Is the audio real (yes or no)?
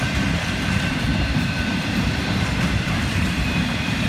no